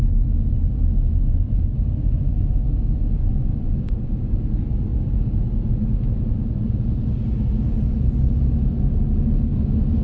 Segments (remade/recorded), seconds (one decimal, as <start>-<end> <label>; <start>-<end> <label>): 0.0-3.3 recorded; 3.3-4.1 remade; 4.1-10.0 recorded